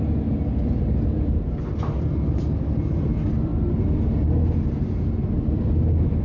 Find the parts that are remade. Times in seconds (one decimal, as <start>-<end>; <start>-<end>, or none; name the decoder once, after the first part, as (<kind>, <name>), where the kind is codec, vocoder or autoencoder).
none